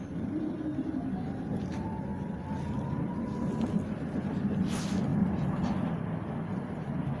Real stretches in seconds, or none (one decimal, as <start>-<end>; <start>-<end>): 0.0-7.2